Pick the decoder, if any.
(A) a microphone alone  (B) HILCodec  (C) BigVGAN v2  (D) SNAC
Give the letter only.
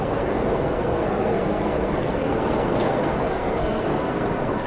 D